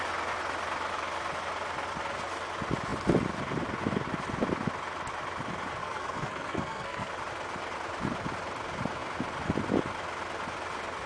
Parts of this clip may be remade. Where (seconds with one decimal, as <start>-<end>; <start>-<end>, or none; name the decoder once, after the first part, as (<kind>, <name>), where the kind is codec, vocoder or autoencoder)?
5.8-7.1 (codec, SNAC)